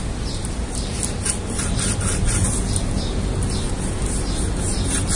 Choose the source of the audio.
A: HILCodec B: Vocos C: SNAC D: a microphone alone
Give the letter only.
D